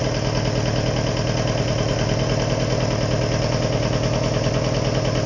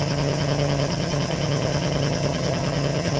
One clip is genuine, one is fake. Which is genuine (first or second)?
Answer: first